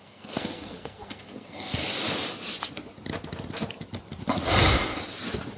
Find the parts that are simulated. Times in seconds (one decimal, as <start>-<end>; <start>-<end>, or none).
0.0-1.8